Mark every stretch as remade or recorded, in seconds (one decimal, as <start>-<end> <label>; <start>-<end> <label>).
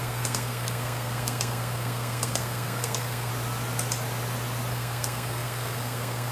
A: 0.0-3.3 remade; 3.3-4.7 recorded; 4.7-6.3 remade